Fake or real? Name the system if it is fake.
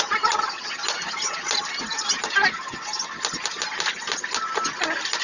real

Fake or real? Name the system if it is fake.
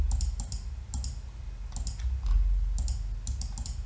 real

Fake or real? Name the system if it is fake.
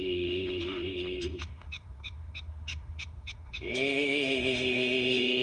fake, autoencoder, DAC-VAE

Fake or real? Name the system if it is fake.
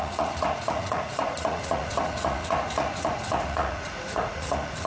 fake, vocoder, Vocos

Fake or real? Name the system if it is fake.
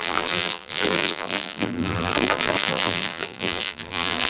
fake, vocoder, BigVGAN v2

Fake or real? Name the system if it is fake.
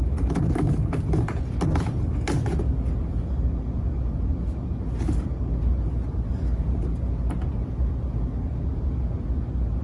real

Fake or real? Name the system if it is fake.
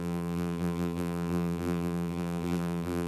fake, vocoder, BigVGAN v2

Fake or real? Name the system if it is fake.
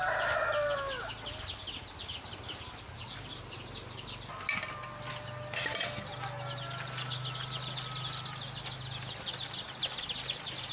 real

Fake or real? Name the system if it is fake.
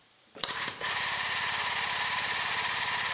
fake, vocoder, BigVGAN v2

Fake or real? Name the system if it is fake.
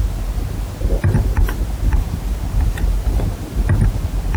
real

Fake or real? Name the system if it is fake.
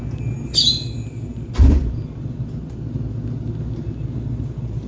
real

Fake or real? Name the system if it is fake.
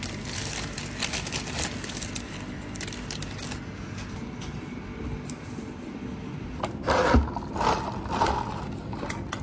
real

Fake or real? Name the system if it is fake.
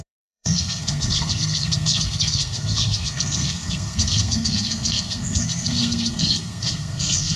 fake, codec, SNAC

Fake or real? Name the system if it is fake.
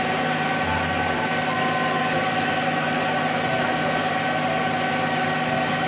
real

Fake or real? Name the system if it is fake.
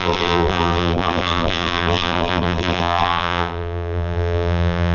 fake, vocoder, BigVGAN v2